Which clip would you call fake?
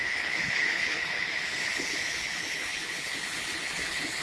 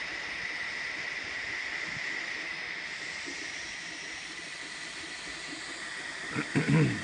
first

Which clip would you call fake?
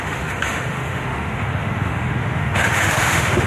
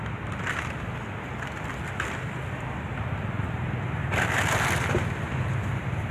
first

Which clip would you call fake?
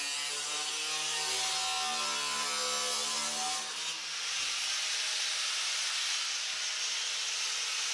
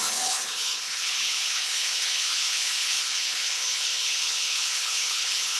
second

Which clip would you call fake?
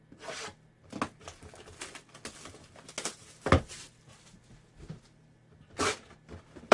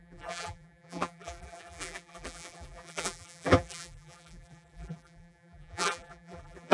second